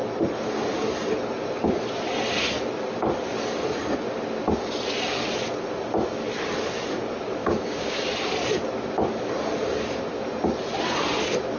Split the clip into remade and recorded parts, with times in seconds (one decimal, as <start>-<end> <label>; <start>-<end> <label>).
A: 0.0-7.4 recorded; 7.4-8.1 remade; 8.1-11.6 recorded